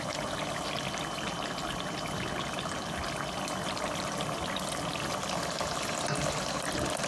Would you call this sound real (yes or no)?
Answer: yes